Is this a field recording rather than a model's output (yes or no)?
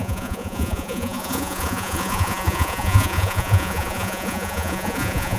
no